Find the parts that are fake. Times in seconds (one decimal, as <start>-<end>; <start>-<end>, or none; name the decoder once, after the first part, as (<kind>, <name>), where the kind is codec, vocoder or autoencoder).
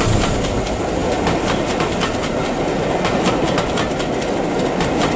none